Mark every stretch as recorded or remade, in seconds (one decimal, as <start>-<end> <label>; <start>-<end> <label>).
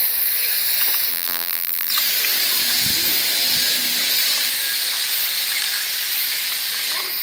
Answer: 0.0-1.1 recorded; 1.1-1.9 remade; 1.9-7.2 recorded